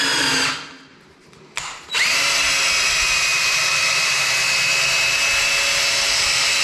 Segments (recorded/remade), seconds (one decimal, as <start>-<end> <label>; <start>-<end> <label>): 0.0-0.9 recorded; 0.9-2.5 remade; 2.5-3.3 recorded; 3.3-4.3 remade; 4.3-6.6 recorded